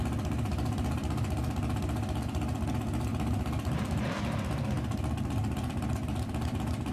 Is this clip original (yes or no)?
yes